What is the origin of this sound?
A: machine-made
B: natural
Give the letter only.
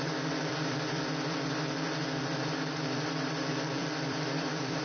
A